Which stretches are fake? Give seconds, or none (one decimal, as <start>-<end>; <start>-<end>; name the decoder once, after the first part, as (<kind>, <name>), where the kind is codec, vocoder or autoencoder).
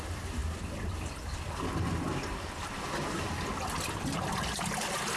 none